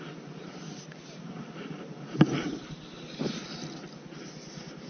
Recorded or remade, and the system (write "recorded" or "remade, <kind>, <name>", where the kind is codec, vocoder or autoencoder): recorded